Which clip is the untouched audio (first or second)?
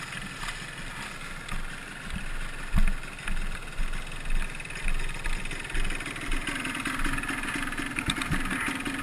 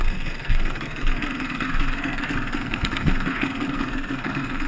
first